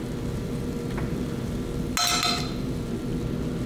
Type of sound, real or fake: real